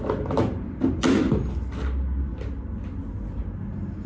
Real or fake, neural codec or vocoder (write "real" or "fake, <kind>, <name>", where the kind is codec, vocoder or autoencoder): fake, vocoder, BigVGAN v2